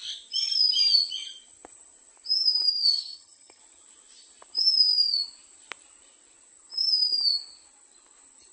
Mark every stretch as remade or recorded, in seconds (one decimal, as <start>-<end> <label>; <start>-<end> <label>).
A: 0.0-2.7 recorded; 2.7-3.6 remade; 3.6-8.5 recorded